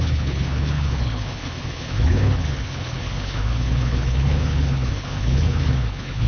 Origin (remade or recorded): remade